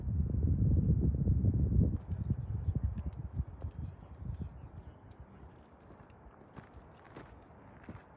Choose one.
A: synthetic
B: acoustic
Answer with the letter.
B